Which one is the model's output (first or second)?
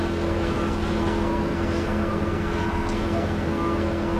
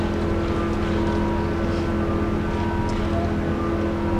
first